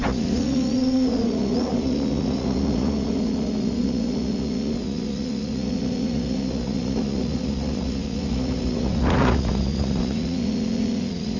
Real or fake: fake